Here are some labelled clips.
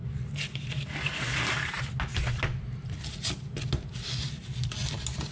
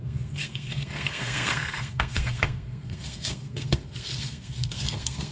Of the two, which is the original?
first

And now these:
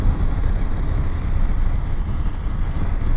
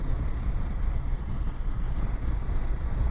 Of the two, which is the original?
first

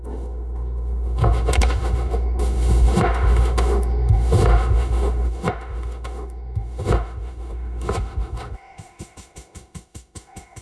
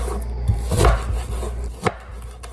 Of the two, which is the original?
second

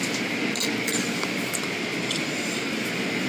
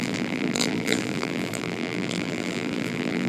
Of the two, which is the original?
first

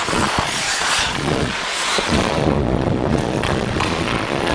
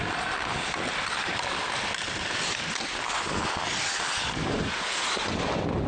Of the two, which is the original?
second